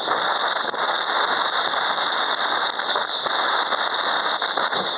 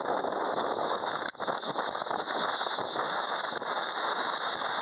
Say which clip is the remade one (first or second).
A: second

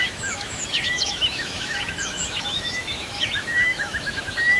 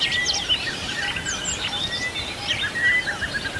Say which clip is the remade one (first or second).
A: first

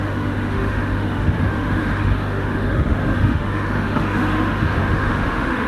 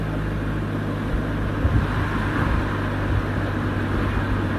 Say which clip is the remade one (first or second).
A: first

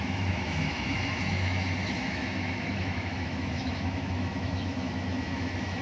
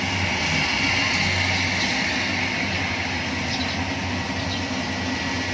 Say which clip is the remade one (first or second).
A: first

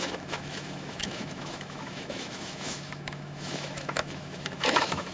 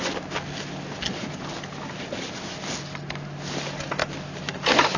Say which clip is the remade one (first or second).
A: first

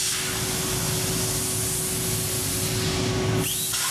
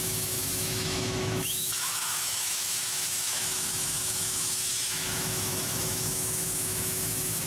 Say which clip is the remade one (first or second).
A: second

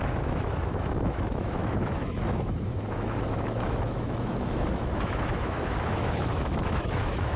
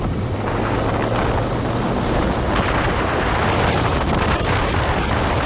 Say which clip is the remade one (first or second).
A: first